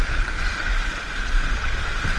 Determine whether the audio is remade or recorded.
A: recorded